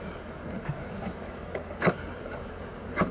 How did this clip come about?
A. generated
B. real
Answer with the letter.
A